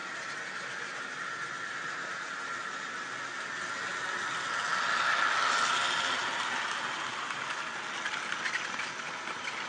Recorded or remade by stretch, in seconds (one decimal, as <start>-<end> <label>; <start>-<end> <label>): 0.0-9.7 recorded